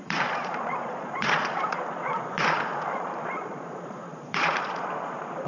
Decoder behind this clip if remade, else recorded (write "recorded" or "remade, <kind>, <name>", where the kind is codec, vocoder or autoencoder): remade, vocoder, Vocos